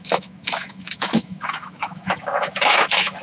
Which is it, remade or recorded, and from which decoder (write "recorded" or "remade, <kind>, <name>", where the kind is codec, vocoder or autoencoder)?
remade, autoencoder, DAC-VAE